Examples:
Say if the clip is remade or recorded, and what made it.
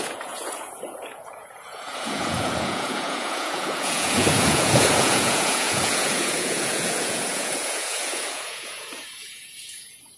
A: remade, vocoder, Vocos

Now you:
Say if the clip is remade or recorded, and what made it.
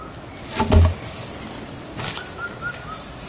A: recorded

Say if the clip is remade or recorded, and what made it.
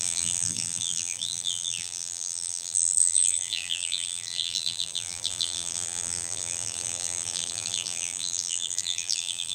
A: remade, vocoder, BigVGAN v2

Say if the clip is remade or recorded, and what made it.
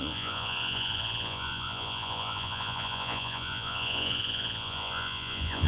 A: remade, vocoder, Vocos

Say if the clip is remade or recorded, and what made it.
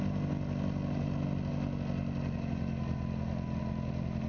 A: recorded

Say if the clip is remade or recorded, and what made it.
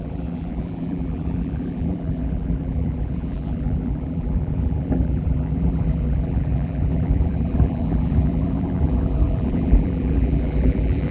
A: remade, vocoder, BigVGAN v2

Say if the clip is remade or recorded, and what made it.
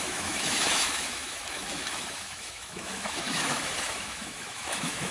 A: remade, autoencoder, DAC-VAE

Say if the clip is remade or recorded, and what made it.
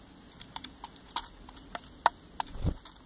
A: recorded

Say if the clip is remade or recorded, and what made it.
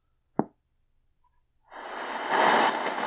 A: recorded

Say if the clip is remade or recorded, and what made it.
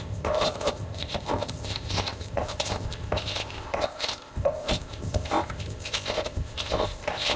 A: remade, codec, ZipCodec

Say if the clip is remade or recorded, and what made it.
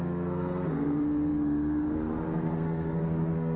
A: remade, codec, SNAC